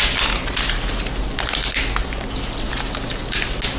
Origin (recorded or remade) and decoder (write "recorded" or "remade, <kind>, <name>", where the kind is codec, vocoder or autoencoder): recorded